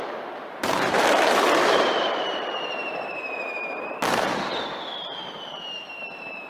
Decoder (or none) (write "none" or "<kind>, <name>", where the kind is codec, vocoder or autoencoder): vocoder, BigVGAN v2